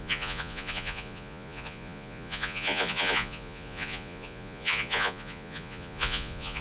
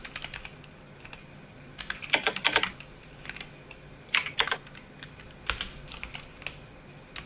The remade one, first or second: first